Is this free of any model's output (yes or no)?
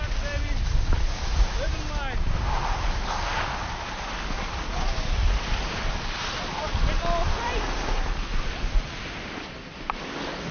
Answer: yes